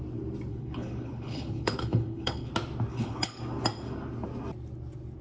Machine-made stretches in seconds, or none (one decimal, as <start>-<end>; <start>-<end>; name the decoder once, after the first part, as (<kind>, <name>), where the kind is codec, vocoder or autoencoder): 0.5-2.5 (codec, HILCodec); 2.9-3.4